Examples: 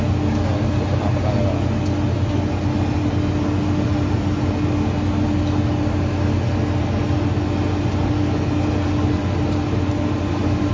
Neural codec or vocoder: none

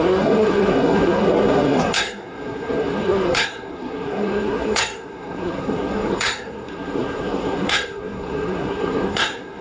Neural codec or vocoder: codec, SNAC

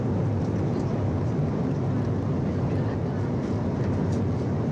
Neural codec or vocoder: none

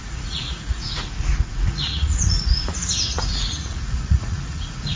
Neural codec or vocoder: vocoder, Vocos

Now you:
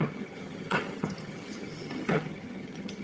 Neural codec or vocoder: vocoder, HiFi-GAN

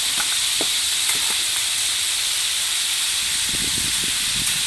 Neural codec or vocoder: none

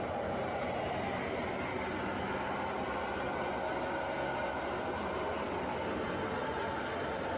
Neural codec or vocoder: none